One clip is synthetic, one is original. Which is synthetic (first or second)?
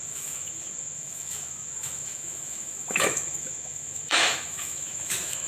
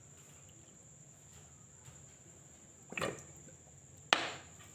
first